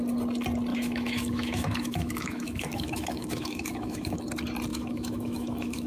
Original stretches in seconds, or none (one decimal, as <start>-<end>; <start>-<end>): 0.0-0.7; 4.2-4.7